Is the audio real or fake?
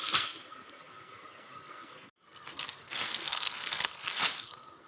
fake